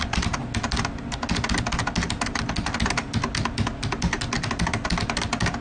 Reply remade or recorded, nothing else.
recorded